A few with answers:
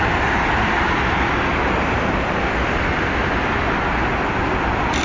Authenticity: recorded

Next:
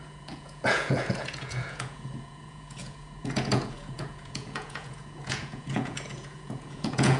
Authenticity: remade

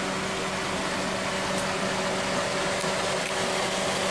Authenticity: recorded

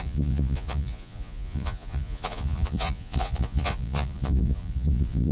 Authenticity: remade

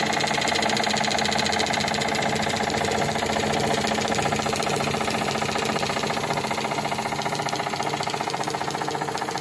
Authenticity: recorded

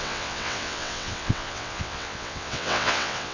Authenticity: remade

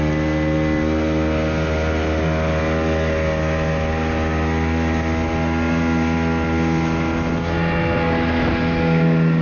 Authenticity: recorded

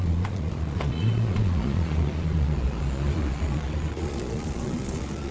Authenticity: remade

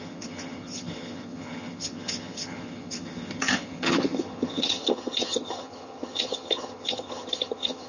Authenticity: remade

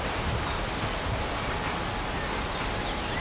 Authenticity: recorded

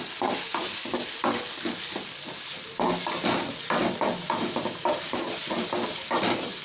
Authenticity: recorded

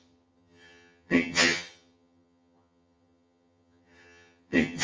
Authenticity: remade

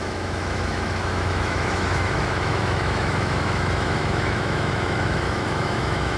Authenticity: remade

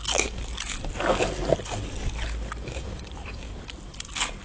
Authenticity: recorded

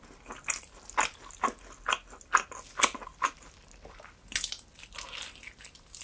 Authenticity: recorded